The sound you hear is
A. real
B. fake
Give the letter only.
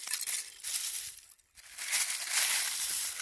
A